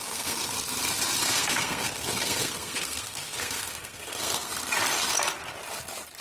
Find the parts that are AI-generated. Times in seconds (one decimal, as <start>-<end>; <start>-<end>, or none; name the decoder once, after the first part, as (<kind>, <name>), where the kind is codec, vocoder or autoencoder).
0.0-0.5 (codec, SNAC); 1.2-4.5